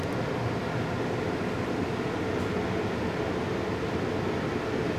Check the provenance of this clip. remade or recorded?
recorded